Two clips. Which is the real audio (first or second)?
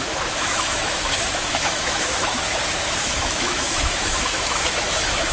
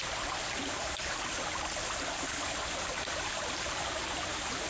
second